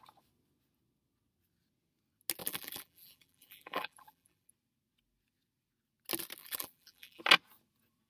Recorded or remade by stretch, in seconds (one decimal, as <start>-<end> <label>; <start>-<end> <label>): 0.0-2.4 recorded; 2.4-4.5 remade; 4.5-6.4 recorded; 6.4-7.2 remade; 7.2-8.1 recorded

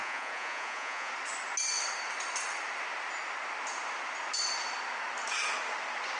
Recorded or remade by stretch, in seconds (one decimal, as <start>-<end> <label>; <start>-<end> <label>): 0.0-1.1 remade; 1.1-6.2 recorded